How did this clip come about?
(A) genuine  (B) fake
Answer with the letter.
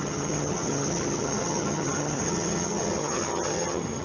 B